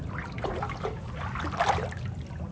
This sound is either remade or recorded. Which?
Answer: recorded